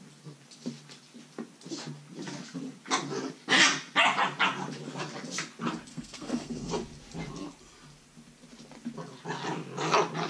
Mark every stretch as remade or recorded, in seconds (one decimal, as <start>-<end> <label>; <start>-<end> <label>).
0.0-5.9 recorded; 5.9-6.7 remade; 6.7-10.3 recorded

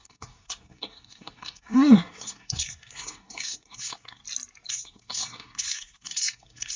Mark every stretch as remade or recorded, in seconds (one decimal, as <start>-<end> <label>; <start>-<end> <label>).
0.0-4.2 remade; 4.2-4.7 recorded; 4.7-6.8 remade

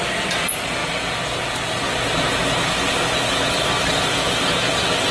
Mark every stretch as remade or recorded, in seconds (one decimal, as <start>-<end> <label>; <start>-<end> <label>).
0.0-5.1 recorded

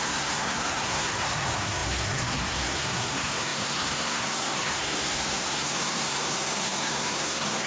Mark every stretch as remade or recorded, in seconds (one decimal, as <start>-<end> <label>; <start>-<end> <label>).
0.0-7.7 remade

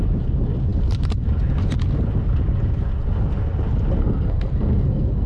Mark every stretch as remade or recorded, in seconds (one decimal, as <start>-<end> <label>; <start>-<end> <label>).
0.0-4.0 recorded; 4.0-5.3 remade

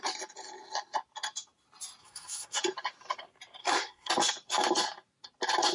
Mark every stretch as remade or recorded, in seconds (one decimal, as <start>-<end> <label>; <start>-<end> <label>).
0.0-2.0 recorded; 2.0-2.6 remade; 2.6-3.6 recorded; 3.6-4.1 remade; 4.1-5.7 recorded